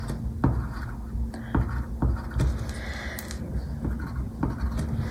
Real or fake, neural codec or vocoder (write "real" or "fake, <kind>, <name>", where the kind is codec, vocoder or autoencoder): real